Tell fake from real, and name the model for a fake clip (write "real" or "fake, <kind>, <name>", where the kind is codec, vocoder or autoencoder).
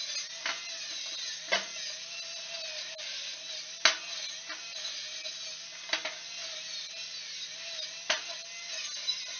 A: real